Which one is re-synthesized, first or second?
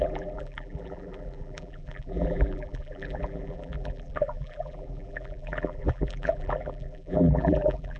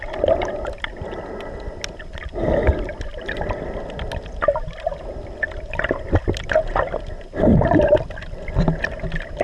first